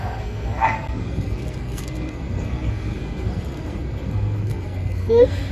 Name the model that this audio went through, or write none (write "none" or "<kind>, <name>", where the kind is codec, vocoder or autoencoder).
codec, SNAC